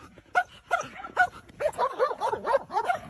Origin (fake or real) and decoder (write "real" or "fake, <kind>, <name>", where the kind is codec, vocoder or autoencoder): fake, vocoder, Vocos